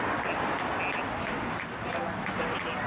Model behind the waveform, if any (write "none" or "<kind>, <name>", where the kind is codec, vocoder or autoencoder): none